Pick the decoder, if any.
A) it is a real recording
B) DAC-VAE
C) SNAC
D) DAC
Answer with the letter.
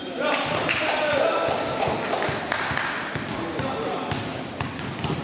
A